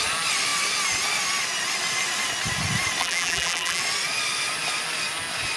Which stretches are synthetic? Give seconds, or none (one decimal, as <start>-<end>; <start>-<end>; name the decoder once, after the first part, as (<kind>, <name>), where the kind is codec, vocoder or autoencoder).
3.0-3.8 (vocoder, BigVGAN v2)